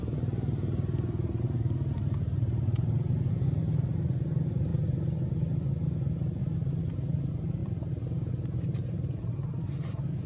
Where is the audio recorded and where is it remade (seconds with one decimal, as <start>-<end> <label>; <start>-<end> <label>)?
0.0-10.3 recorded